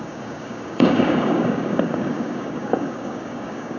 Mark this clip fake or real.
fake